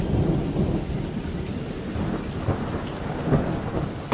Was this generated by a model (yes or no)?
no